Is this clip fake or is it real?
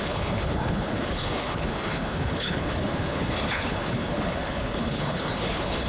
fake